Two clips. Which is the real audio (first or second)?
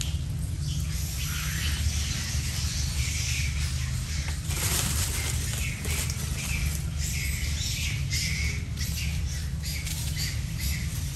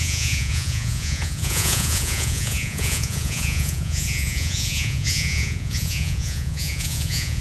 first